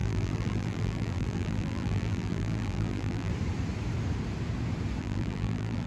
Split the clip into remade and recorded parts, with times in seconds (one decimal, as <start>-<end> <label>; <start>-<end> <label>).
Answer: 0.0-3.3 remade; 3.3-5.0 recorded; 5.0-5.9 remade